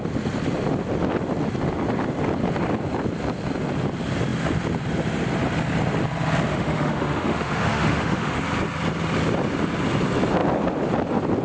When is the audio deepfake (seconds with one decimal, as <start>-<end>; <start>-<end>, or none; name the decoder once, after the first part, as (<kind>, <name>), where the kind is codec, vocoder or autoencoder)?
6.5-8.4 (autoencoder, DAC-VAE)